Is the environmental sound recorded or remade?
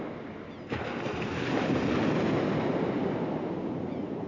recorded